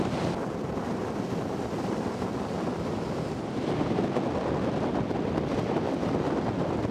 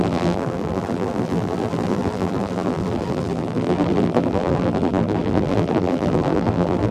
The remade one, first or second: second